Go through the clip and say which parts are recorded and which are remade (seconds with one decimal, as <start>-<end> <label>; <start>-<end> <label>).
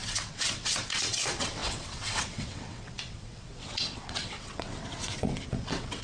0.0-6.0 remade